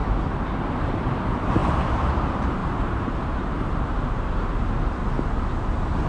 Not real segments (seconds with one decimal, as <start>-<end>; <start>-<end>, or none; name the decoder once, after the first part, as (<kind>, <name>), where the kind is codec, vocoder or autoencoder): 0.7-5.0 (vocoder, BigVGAN v2)